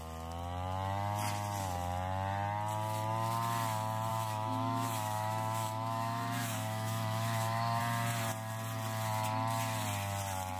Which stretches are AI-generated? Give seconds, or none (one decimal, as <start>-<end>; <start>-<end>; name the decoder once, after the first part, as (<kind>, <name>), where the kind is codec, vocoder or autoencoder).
4.1-7.8 (autoencoder, DAC-VAE)